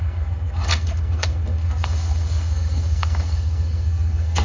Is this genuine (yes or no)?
no